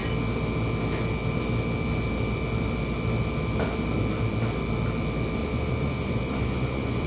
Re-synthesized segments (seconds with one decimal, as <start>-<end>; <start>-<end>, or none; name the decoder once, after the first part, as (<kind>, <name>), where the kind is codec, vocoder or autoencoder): 5.4-7.1 (vocoder, Vocos)